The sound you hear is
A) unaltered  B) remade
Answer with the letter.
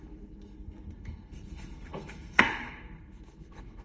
B